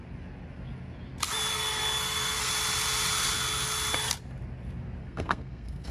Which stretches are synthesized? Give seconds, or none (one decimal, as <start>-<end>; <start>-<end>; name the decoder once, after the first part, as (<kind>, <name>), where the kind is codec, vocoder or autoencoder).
1.5-2.5 (codec, SNAC); 5.0-5.9